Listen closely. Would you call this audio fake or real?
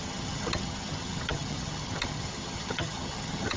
fake